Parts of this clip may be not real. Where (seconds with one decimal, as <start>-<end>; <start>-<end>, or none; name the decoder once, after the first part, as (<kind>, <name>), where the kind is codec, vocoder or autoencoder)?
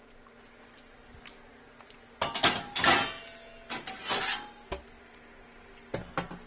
none